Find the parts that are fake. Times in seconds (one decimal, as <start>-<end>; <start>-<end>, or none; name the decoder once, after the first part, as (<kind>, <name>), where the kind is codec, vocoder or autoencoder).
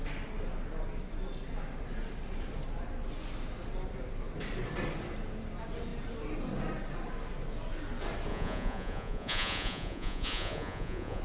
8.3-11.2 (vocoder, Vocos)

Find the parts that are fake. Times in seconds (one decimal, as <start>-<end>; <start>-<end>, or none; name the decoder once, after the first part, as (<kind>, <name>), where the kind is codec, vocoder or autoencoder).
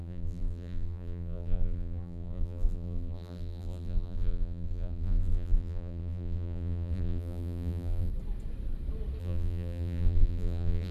0.0-8.1 (vocoder, BigVGAN v2); 9.2-10.9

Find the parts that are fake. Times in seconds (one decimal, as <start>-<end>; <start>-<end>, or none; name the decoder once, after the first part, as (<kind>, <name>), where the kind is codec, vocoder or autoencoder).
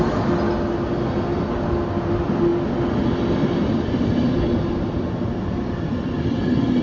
none